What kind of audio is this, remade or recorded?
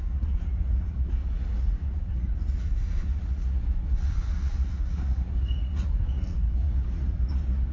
remade